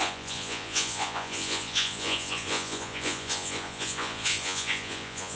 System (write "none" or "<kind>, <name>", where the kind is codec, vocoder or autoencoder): vocoder, Vocos